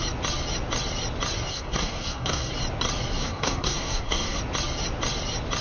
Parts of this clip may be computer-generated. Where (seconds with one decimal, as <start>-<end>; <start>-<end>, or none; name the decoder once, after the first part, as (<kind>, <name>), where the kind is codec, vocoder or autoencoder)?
1.5-2.5 (codec, SNAC); 3.2-4.4